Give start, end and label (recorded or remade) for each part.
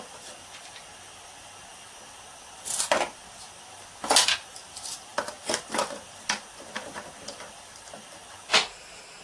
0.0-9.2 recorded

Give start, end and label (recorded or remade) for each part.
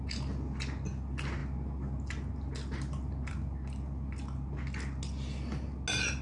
0.0-6.2 recorded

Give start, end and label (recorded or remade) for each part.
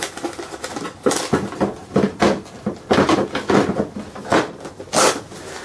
0.0-5.6 recorded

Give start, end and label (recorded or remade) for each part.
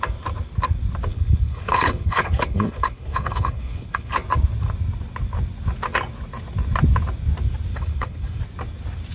0.0-1.1 recorded; 1.1-4.1 remade; 4.1-7.7 recorded; 7.7-8.4 remade; 8.4-9.1 recorded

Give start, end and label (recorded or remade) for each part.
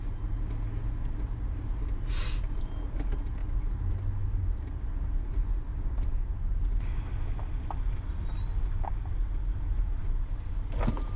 0.0-11.2 recorded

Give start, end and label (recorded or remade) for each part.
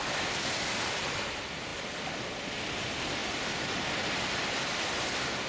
0.0-5.5 recorded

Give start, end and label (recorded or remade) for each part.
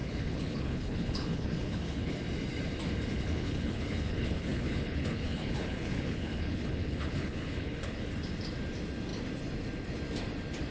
0.0-2.2 remade; 2.2-3.1 recorded; 3.1-8.1 remade; 8.1-10.7 recorded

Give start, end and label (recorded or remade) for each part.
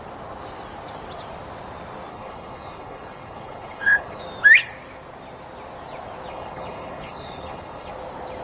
0.0-2.1 recorded; 2.1-4.2 remade; 4.2-6.3 recorded; 6.3-7.9 remade; 7.9-8.4 recorded